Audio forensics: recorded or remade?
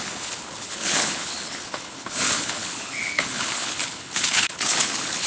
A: remade